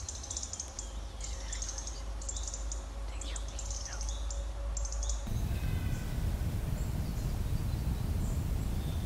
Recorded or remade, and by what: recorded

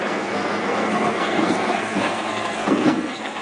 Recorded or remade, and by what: remade, codec, SNAC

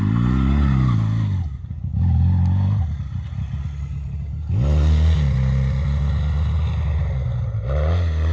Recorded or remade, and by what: recorded